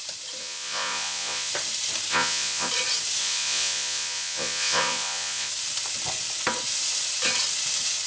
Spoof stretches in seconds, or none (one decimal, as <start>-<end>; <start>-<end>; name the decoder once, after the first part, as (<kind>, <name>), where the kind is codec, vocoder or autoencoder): 0.4-1.5 (vocoder, Vocos); 2.1-2.7; 3.2-5.5